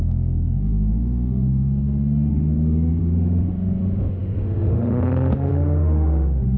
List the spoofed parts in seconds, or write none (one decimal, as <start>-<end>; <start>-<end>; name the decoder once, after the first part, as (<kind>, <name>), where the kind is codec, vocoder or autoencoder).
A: 0.0-6.6 (autoencoder, DAC-VAE)